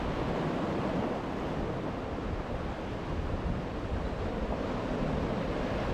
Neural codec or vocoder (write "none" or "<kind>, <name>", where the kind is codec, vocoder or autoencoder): none